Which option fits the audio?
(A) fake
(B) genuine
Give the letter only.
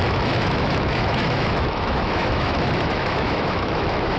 A